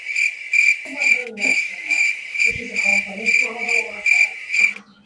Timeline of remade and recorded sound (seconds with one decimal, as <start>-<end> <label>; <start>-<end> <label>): 0.0-1.2 recorded; 1.2-2.5 remade; 2.5-5.1 recorded